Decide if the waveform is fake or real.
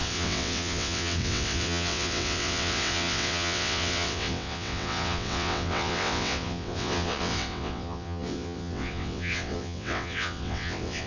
fake